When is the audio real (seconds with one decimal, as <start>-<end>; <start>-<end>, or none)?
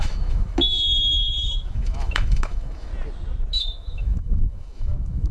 2.9-3.5